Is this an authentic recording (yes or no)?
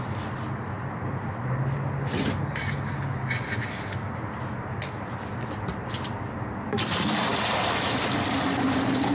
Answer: yes